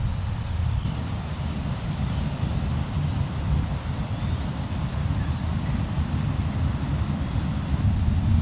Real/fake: real